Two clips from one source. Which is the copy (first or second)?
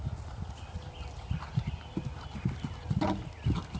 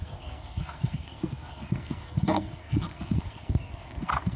second